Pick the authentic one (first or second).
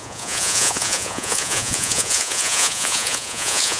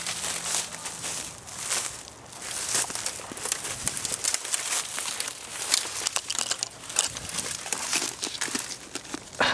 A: second